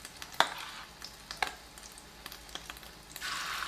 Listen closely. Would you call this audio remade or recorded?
recorded